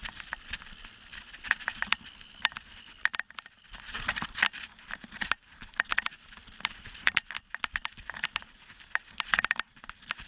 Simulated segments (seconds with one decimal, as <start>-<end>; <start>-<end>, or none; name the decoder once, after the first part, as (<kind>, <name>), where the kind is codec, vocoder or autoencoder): none